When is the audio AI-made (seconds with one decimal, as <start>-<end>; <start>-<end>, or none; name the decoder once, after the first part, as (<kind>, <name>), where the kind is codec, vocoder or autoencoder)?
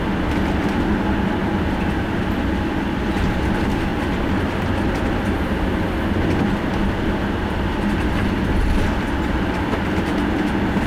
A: 1.4-2.3 (vocoder, BigVGAN v2); 3.9-4.7